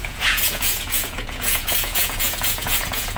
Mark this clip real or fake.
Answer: fake